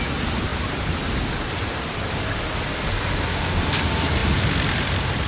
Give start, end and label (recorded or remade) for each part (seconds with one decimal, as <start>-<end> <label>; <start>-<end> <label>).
0.0-5.3 recorded